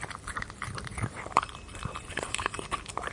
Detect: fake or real real